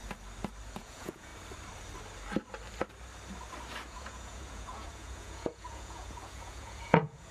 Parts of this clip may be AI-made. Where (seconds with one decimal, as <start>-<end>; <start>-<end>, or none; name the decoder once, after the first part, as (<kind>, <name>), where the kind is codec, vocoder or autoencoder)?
0.7-1.3 (vocoder, Vocos); 3.9-7.3